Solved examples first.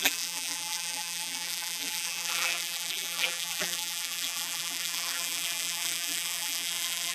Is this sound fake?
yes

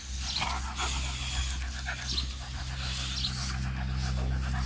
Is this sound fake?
no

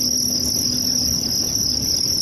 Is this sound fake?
no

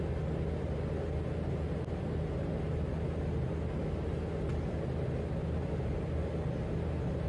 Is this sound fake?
no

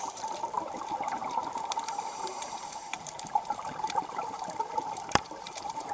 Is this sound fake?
yes